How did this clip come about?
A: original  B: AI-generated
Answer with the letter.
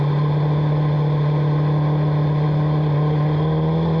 A